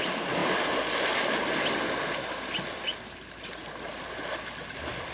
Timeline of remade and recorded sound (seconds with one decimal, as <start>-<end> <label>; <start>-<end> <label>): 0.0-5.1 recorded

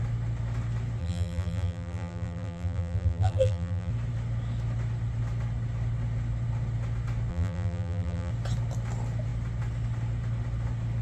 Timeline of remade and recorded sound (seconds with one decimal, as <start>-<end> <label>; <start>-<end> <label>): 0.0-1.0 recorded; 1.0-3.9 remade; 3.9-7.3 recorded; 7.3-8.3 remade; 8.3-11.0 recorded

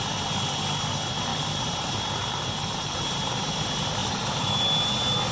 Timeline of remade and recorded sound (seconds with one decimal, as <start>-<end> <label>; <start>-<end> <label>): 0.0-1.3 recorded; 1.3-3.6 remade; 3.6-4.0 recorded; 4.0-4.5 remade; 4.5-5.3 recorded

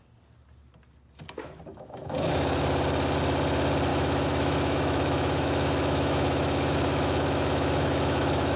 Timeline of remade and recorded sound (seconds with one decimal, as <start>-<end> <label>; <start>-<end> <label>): 0.0-1.7 recorded; 1.7-2.6 remade; 2.6-3.9 recorded; 3.9-8.6 remade